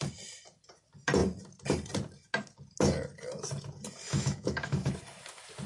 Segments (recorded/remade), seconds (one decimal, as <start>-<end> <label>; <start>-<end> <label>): 0.0-4.0 recorded; 4.0-4.9 remade; 4.9-5.7 recorded